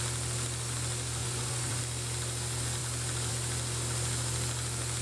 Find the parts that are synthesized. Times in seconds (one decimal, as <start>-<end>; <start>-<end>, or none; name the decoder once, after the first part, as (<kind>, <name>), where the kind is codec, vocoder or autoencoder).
1.2-1.8 (vocoder, Vocos)